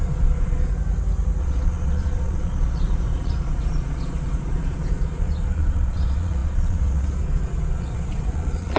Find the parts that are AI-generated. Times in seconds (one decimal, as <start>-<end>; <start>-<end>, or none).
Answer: 0.0-0.7; 1.4-8.8